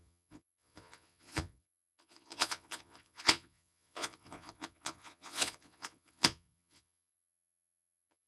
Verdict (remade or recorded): remade